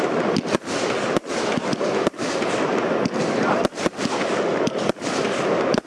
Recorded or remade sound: recorded